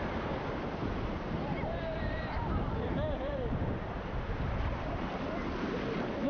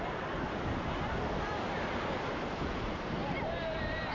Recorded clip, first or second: second